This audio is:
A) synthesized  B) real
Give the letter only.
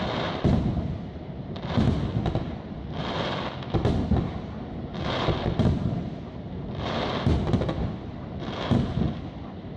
B